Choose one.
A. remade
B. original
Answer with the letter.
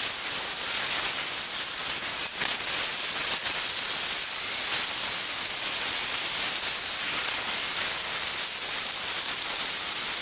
B